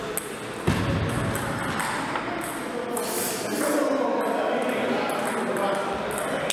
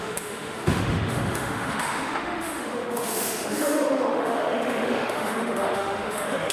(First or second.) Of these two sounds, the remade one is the second